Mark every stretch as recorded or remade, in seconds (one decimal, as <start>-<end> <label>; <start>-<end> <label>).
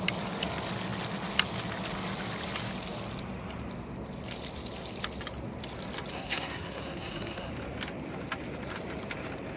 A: 0.0-6.1 recorded; 6.1-7.5 remade; 7.5-9.6 recorded